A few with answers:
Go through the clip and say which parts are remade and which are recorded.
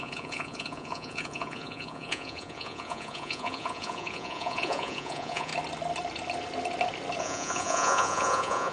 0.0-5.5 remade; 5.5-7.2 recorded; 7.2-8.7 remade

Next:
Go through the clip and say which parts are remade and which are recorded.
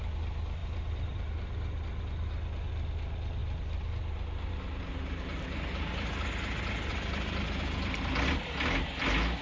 0.0-0.6 recorded; 0.6-1.2 remade; 1.2-3.4 recorded; 3.4-4.5 remade; 4.5-6.9 recorded; 6.9-8.0 remade; 8.0-9.4 recorded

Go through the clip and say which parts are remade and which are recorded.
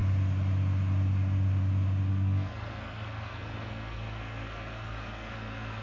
0.0-2.1 recorded; 2.1-5.8 remade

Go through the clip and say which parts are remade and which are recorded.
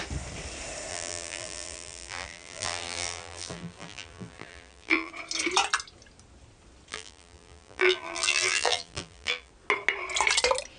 0.0-0.9 recorded; 0.9-5.1 remade; 5.1-6.9 recorded; 6.9-9.5 remade; 9.5-10.8 recorded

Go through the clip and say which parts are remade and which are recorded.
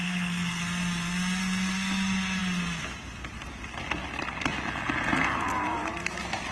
0.0-0.6 remade; 0.6-6.5 recorded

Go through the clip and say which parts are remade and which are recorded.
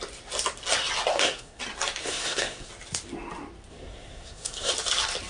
0.0-1.1 recorded; 1.1-1.6 remade; 1.6-2.0 recorded; 2.0-2.7 remade; 2.7-3.7 recorded; 3.7-4.7 remade; 4.7-5.3 recorded